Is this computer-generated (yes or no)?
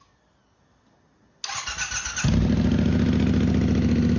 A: no